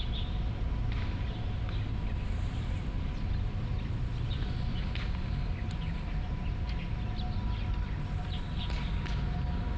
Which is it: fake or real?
real